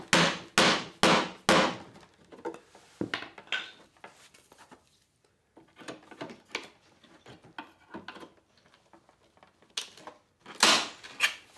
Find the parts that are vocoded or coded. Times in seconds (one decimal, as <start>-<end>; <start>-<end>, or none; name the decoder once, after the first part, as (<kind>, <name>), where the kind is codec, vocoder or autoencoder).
none